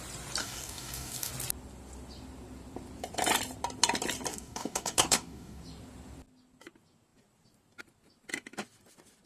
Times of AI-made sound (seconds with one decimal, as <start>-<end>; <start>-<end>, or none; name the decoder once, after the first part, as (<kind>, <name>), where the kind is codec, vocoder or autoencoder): 0.4-1.3 (codec, DAC); 4.3-5.6